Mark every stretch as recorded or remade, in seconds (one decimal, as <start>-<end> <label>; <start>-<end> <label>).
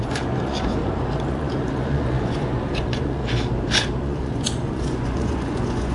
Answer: 0.0-0.8 remade; 0.8-1.3 recorded; 1.3-3.2 remade; 3.2-4.0 recorded; 4.0-5.9 remade